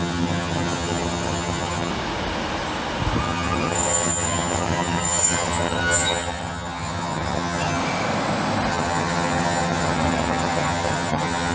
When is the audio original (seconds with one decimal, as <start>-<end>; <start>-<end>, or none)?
1.9-3.2; 7.8-8.7